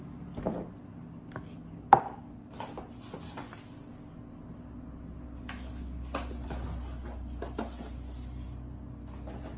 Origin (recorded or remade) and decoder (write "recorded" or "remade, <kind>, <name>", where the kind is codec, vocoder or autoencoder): recorded